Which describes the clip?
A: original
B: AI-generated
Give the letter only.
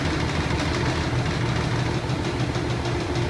A